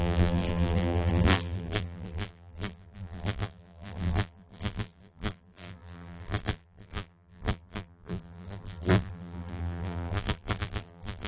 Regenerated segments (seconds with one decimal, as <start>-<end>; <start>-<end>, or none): 0.0-11.3